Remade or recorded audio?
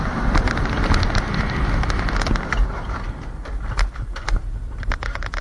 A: recorded